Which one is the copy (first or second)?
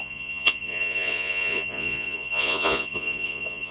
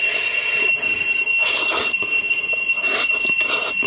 first